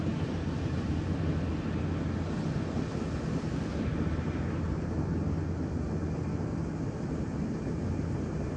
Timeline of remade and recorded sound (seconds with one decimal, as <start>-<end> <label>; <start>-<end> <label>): 0.0-1.3 remade; 1.3-4.1 recorded; 4.1-5.1 remade; 5.1-7.1 recorded; 7.1-8.6 remade